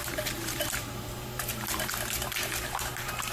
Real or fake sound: fake